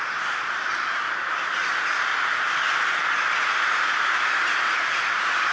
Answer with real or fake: real